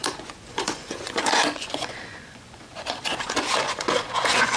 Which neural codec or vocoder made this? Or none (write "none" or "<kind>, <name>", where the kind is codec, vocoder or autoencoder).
vocoder, Vocos